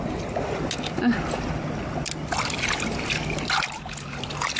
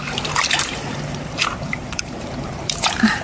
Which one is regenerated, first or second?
second